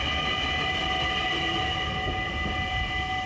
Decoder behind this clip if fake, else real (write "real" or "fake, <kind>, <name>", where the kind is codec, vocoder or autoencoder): real